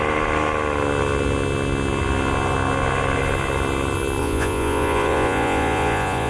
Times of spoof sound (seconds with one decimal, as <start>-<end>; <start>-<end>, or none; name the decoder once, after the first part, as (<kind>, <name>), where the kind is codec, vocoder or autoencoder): 4.2-6.3 (vocoder, Vocos)